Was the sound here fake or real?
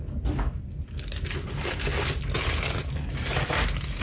real